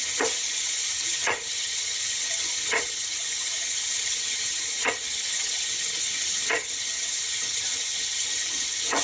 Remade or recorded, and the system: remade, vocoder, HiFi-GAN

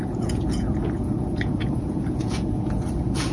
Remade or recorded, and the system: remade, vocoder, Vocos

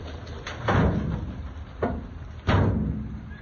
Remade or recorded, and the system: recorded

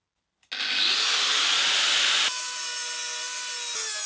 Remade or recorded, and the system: recorded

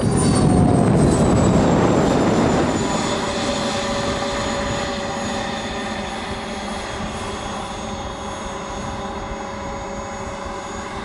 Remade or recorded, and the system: recorded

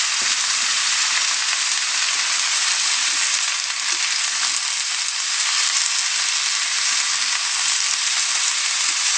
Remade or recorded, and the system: recorded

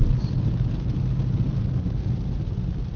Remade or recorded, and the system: recorded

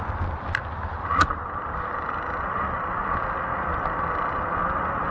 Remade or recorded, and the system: recorded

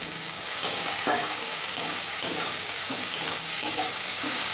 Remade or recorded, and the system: remade, codec, DAC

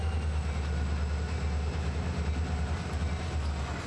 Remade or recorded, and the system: recorded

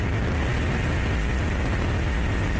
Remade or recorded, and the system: recorded